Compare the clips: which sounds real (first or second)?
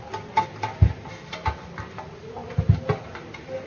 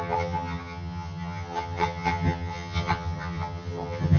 first